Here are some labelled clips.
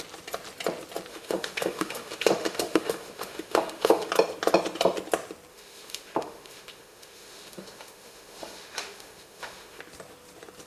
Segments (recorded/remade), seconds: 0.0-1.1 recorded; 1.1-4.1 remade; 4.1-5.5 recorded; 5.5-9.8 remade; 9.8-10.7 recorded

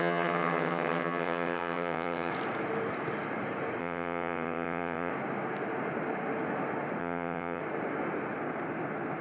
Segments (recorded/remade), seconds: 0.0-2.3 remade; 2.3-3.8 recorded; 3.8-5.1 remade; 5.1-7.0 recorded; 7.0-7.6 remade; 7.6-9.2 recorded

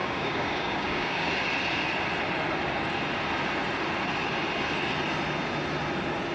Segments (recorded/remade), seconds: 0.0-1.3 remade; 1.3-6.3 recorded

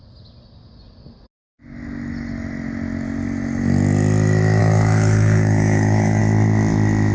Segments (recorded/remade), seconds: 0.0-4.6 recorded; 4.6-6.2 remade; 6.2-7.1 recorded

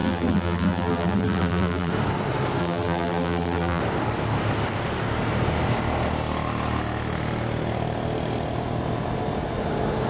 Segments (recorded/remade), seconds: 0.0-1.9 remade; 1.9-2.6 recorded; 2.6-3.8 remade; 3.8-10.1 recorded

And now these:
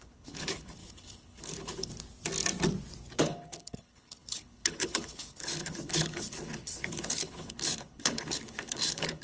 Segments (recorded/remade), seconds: 0.0-1.9 remade; 1.9-3.2 recorded; 3.2-9.2 remade

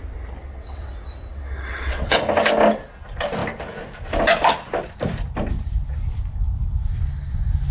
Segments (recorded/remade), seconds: 0.0-0.4 recorded; 0.4-0.9 remade; 0.9-1.3 recorded; 1.3-2.2 remade; 2.2-7.7 recorded